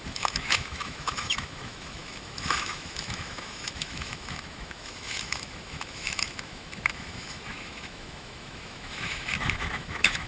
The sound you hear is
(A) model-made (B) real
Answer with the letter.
A